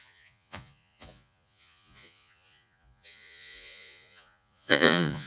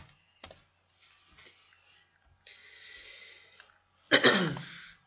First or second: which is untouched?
second